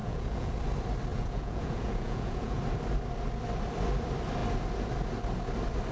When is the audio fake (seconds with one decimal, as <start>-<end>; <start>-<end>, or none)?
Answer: 0.0-0.6; 1.1-2.6